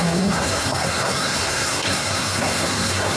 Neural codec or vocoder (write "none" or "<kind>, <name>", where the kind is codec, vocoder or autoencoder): codec, SNAC